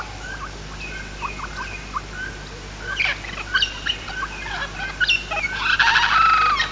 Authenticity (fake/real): real